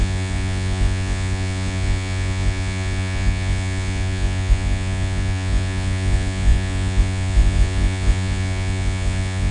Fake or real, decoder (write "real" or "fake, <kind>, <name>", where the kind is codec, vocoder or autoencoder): fake, vocoder, Vocos